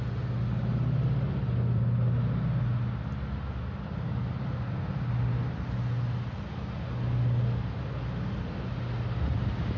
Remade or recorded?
recorded